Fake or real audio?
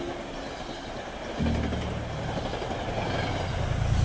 real